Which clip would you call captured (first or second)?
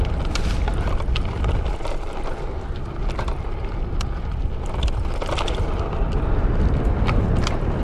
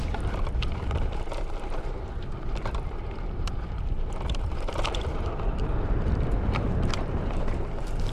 first